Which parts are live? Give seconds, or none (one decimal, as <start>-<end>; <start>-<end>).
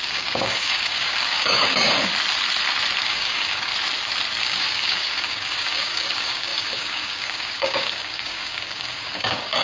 2.1-3.0; 3.7-4.4